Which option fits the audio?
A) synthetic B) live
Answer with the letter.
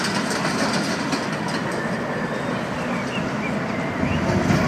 B